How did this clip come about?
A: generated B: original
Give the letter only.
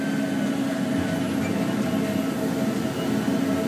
B